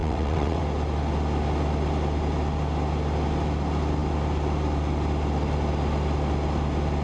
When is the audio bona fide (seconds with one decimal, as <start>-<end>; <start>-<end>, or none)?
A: 0.6-7.0